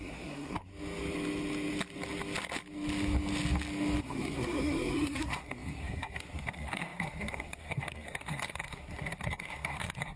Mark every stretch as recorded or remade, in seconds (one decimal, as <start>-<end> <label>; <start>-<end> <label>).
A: 0.0-0.7 remade; 0.7-4.0 recorded; 4.0-10.2 remade